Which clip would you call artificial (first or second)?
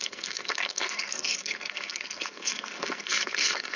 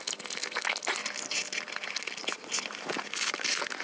first